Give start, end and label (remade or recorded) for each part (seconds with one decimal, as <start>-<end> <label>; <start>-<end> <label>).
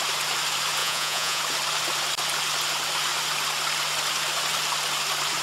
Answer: 0.0-0.8 recorded; 0.8-1.4 remade; 1.4-5.4 recorded